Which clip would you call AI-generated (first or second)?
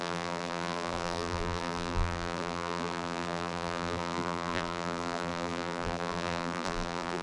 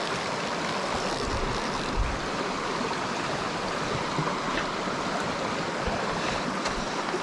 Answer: first